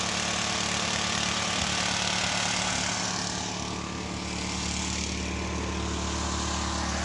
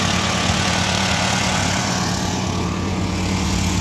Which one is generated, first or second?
second